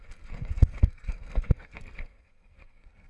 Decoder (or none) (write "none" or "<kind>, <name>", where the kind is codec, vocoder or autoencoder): codec, SNAC